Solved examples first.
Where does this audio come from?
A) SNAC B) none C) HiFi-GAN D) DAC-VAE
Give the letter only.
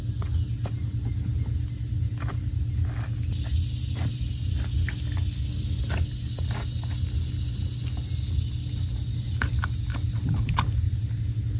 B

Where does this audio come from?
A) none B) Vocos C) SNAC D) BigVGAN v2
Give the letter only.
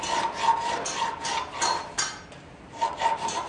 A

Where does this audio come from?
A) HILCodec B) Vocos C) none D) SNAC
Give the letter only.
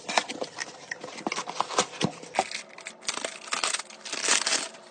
C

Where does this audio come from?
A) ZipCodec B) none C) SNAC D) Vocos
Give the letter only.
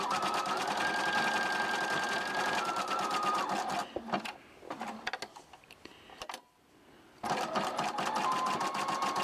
B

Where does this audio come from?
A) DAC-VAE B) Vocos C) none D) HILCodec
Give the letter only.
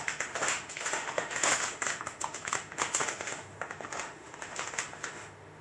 A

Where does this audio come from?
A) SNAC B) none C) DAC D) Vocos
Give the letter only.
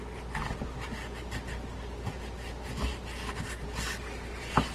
B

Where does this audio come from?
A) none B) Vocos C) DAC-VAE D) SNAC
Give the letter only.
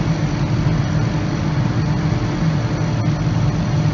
A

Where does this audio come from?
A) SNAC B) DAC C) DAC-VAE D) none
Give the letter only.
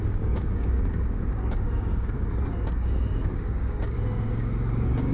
B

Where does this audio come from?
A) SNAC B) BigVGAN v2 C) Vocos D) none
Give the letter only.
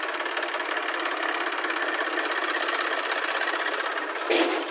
D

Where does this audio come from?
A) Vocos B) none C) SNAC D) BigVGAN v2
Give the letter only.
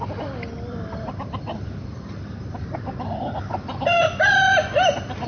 B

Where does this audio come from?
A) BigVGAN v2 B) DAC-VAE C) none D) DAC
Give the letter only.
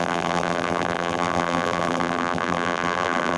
A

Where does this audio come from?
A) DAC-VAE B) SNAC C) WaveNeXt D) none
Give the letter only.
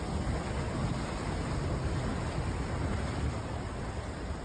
D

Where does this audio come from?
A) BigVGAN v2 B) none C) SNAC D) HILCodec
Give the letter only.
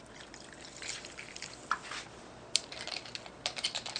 B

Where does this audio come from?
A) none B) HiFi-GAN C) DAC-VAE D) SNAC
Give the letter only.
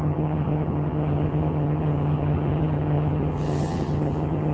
B